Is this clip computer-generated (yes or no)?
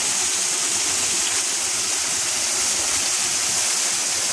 no